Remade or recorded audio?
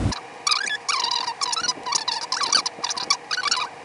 recorded